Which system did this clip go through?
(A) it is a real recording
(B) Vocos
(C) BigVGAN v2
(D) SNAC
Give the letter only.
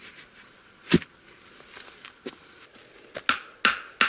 A